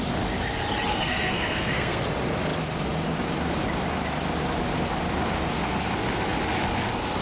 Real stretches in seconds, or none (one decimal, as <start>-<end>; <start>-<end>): 0.0-0.9; 2.0-7.2